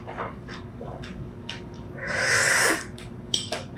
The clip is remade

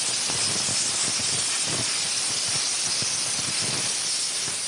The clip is recorded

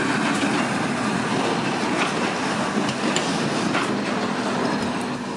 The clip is recorded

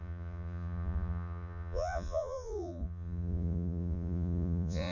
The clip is remade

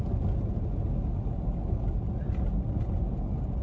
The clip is recorded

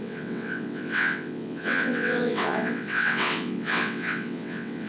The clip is remade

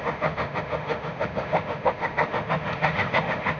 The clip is remade